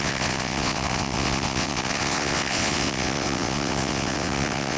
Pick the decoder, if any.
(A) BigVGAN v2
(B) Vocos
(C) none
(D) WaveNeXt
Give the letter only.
D